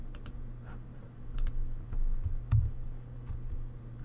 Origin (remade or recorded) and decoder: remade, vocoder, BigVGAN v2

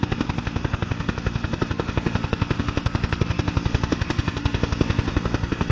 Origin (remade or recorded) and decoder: remade, codec, SNAC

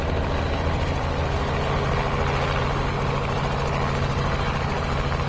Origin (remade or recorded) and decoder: recorded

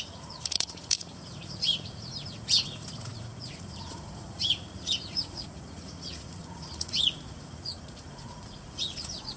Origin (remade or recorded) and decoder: remade, vocoder, Vocos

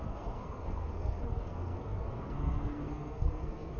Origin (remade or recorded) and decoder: remade, codec, SNAC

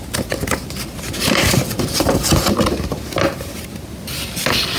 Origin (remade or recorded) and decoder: recorded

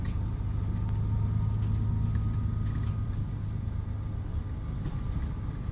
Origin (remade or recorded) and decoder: recorded